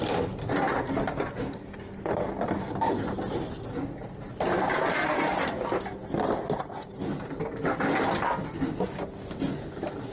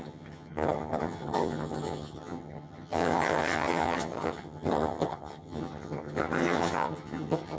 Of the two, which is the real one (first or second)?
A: first